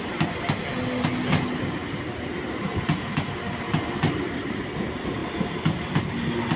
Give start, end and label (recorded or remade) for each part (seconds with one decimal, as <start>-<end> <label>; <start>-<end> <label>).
0.0-6.6 recorded